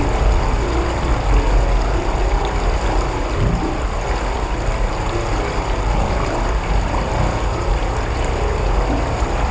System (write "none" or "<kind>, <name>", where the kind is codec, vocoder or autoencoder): none